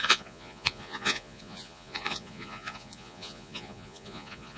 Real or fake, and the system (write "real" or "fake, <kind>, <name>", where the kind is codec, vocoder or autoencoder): fake, vocoder, Vocos